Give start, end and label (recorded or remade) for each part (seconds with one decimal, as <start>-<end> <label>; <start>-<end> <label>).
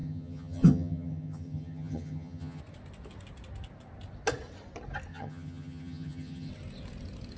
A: 0.0-2.6 remade; 2.6-5.1 recorded; 5.1-6.5 remade; 6.5-7.4 recorded